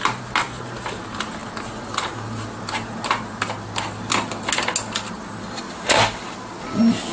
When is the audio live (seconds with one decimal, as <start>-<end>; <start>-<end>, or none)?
0.0-7.1